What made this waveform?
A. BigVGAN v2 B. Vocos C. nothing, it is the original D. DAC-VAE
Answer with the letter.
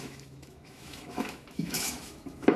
D